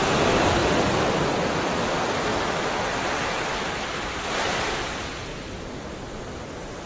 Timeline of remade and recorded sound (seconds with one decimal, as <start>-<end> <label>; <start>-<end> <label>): 0.0-0.6 remade; 0.6-1.4 recorded; 1.4-2.3 remade; 2.3-4.1 recorded; 4.1-6.9 remade